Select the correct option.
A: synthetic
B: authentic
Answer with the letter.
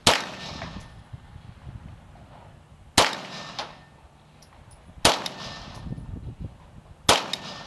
B